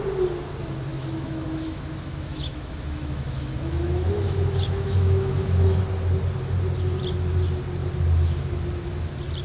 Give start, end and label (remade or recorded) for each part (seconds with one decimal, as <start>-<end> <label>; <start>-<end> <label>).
0.0-0.9 recorded; 0.9-5.8 remade; 5.8-9.4 recorded